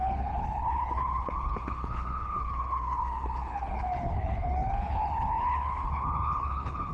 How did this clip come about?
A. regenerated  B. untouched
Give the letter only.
A